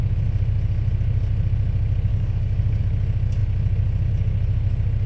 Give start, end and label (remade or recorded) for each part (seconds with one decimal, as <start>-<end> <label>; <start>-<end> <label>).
0.0-2.1 recorded; 2.1-2.8 remade; 2.8-5.1 recorded